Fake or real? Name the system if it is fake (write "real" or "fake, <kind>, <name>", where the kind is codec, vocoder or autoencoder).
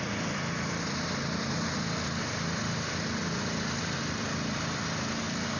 real